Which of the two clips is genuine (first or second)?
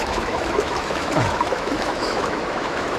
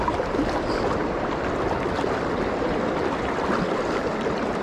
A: second